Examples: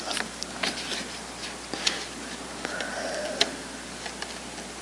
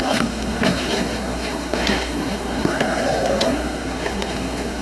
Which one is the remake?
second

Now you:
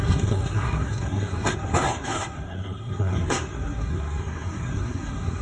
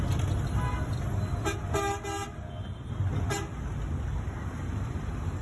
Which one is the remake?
first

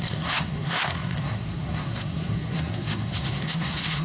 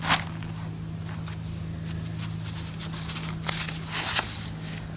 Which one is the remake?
first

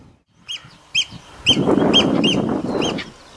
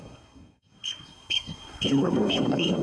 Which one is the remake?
second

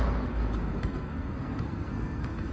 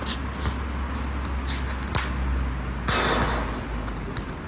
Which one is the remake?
first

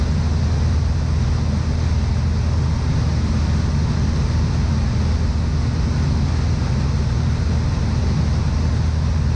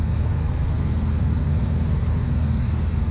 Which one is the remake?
second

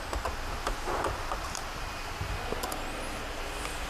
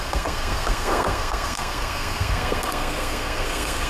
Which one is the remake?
second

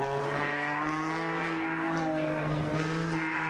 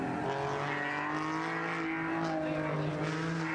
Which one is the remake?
first